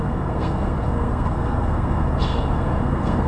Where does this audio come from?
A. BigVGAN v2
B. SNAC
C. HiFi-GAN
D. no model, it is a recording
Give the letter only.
B